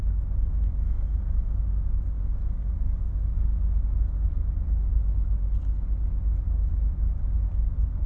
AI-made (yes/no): no